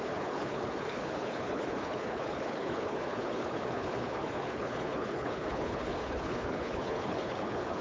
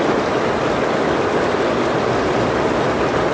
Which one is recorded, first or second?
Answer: second